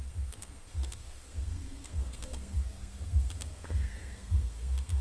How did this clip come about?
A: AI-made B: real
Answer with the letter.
A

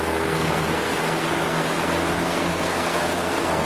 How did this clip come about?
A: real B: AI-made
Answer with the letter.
B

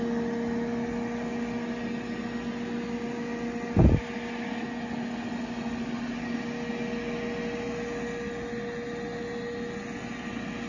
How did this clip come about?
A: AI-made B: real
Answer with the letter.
B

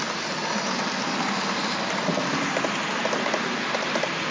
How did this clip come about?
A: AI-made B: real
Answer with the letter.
B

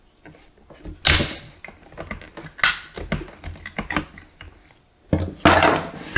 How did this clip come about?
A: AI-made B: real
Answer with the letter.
B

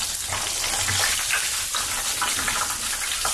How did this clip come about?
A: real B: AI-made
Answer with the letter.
A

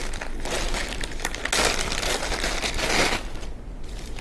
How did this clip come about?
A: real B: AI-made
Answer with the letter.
A